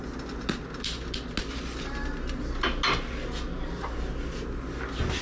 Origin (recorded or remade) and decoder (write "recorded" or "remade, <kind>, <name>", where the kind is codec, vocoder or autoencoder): recorded